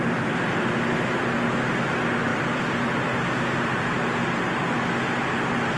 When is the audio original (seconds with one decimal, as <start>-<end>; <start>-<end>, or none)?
0.0-5.8